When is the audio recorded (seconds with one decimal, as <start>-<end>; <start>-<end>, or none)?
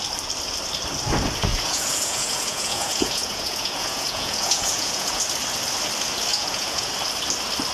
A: 0.0-1.5; 5.2-6.3; 6.9-7.7